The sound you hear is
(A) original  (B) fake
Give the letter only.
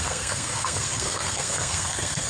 B